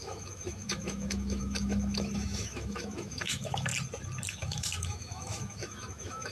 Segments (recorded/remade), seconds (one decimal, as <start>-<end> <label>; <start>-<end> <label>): 0.0-3.7 remade; 3.7-4.3 recorded; 4.3-6.3 remade

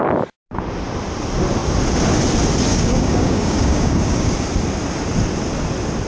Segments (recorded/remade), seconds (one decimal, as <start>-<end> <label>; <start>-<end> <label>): 0.0-2.7 recorded; 2.7-4.3 remade; 4.3-6.1 recorded

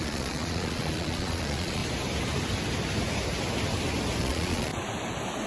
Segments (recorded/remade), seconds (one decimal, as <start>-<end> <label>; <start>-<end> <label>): 0.0-1.8 remade; 1.8-4.2 recorded; 4.2-4.7 remade; 4.7-5.5 recorded

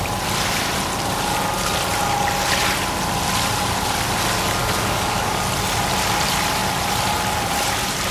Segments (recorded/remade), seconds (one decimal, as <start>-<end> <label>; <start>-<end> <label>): 0.0-4.6 recorded; 4.6-5.4 remade; 5.4-8.1 recorded

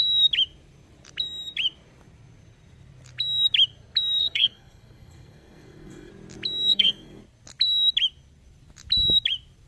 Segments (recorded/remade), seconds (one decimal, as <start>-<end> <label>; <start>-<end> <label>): 0.0-4.2 recorded; 4.2-6.1 remade; 6.1-6.7 recorded; 6.7-7.2 remade; 7.2-9.7 recorded

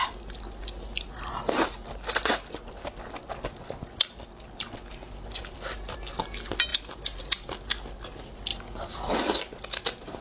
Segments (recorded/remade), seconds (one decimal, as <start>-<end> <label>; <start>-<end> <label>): 0.0-10.2 recorded

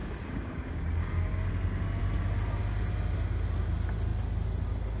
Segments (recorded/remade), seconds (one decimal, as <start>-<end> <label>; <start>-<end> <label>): 0.0-1.5 remade; 1.5-5.0 recorded

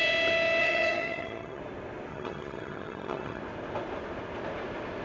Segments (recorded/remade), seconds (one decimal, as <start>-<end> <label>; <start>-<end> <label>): 0.0-0.6 recorded; 0.6-1.6 remade; 1.6-2.1 recorded; 2.1-3.4 remade; 3.4-5.0 recorded